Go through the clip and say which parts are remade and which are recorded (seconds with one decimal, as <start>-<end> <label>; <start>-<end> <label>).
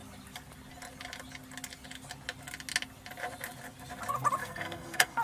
0.0-4.4 recorded; 4.4-5.2 remade